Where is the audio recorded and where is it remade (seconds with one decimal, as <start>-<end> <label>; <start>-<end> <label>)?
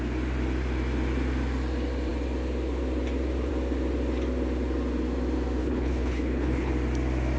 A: 0.0-5.6 recorded; 5.6-6.7 remade; 6.7-7.4 recorded